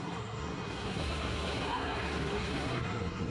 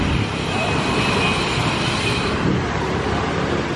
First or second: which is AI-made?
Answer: first